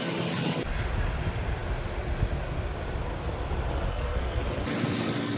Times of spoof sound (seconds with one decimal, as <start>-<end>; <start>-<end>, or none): 3.9-4.4